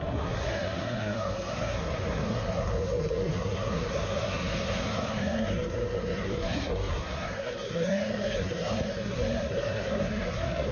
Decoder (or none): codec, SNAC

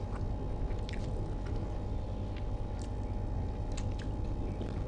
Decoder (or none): none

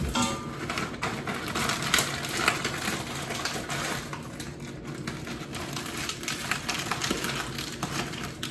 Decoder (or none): none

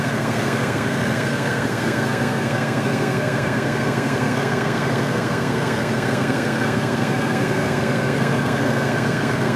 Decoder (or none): codec, SNAC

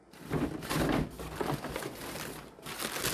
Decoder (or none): none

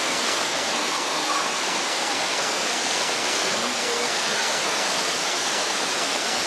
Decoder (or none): codec, SNAC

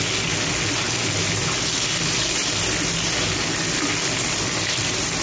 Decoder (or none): none